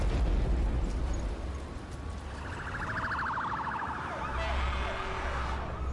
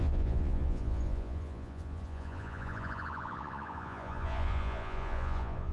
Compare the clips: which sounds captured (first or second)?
first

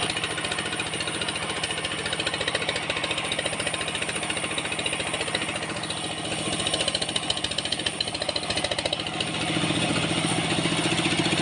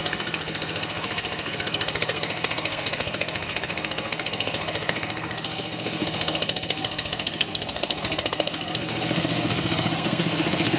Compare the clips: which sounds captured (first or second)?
first